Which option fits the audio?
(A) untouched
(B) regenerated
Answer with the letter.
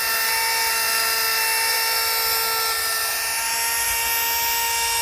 A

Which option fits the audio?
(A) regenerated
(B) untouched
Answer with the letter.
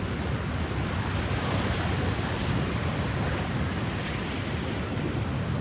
B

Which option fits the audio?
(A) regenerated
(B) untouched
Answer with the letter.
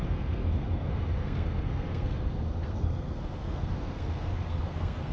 A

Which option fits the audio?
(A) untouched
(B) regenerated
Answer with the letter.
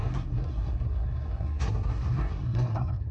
B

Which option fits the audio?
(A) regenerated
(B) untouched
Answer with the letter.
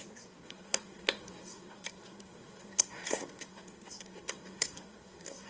A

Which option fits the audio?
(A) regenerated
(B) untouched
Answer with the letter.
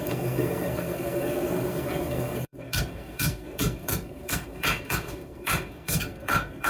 A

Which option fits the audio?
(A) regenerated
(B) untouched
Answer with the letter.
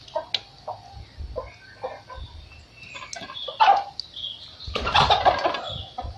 B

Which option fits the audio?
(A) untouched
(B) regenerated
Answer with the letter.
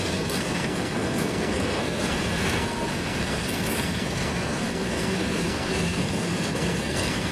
B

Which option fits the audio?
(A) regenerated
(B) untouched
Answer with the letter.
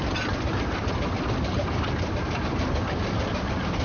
B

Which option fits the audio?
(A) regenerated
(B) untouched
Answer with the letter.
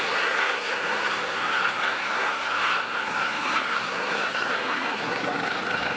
A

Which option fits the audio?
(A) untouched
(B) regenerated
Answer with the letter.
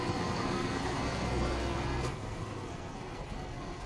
B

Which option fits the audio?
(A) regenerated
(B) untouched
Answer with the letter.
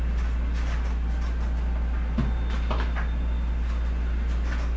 B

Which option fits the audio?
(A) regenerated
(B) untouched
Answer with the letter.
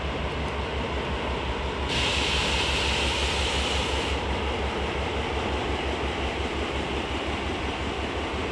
B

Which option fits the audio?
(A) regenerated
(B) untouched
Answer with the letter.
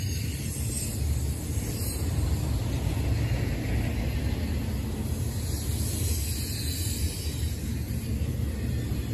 B